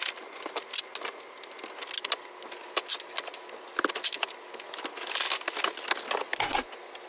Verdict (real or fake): real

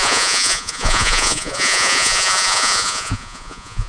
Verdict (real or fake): fake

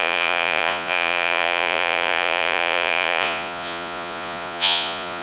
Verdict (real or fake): fake